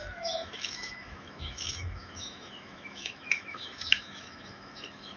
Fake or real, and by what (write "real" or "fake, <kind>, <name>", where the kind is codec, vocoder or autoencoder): fake, autoencoder, DAC-VAE